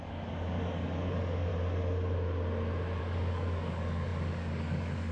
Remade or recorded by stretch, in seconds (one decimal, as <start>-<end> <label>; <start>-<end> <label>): 0.0-1.5 remade; 1.5-3.0 recorded; 3.0-5.1 remade